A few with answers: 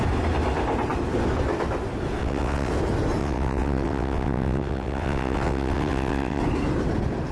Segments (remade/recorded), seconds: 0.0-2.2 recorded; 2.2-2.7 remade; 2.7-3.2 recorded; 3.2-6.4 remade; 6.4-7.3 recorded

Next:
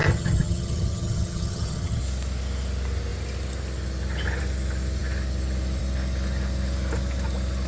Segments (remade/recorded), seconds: 0.0-2.0 remade; 2.0-7.7 recorded

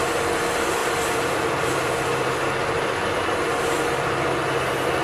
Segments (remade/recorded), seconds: 0.0-0.8 recorded; 0.8-3.8 remade; 3.8-5.0 recorded

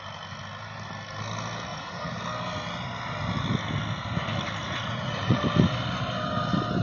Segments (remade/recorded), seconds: 0.0-1.7 recorded; 1.7-2.2 remade; 2.2-4.6 recorded; 4.6-5.4 remade; 5.4-6.8 recorded

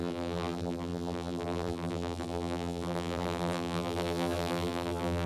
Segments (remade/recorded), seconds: 0.0-5.3 remade

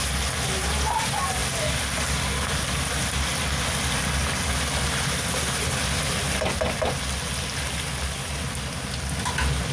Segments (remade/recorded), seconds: 0.0-9.7 recorded